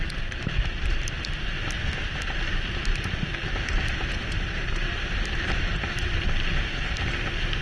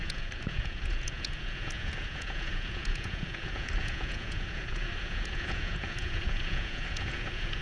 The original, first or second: first